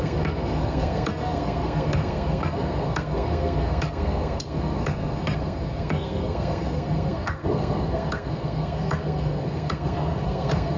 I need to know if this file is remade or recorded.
remade